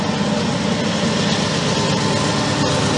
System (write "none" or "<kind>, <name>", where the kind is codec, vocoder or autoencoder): none